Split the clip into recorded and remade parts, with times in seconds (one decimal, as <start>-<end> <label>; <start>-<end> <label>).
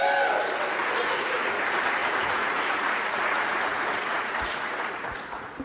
0.0-0.8 recorded; 0.8-1.6 remade; 1.6-2.0 recorded; 2.0-5.6 remade